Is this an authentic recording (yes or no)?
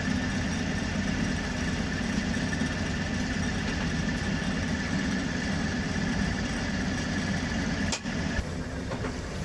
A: yes